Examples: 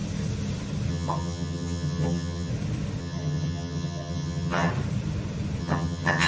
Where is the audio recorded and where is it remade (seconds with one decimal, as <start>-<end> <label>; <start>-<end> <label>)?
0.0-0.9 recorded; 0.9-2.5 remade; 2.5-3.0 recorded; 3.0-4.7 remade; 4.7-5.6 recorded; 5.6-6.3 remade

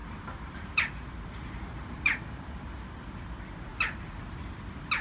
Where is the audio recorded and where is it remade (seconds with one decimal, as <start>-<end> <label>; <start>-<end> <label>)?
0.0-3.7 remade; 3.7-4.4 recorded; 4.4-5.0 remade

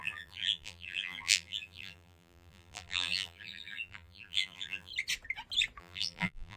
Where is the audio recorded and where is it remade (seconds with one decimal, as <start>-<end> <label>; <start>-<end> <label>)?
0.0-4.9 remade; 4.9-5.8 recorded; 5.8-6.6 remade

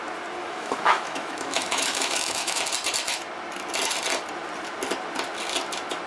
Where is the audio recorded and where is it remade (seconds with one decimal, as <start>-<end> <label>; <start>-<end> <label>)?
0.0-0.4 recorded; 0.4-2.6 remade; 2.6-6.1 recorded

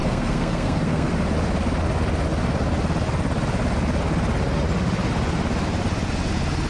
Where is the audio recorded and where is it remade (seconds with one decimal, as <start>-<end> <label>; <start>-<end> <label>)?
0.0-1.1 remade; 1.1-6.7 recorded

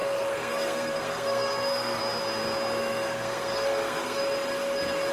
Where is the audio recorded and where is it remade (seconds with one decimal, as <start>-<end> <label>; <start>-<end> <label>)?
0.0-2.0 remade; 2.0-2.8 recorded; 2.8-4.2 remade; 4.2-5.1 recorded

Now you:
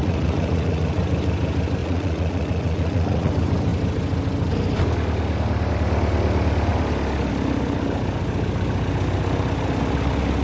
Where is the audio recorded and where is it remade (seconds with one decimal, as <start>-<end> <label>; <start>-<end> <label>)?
0.0-1.0 remade; 1.0-1.8 recorded; 1.8-3.3 remade; 3.3-10.4 recorded